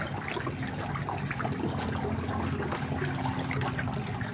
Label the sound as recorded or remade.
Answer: recorded